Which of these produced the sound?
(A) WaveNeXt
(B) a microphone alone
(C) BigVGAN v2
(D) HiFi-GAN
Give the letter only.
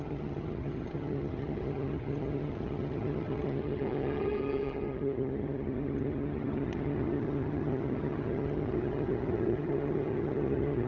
D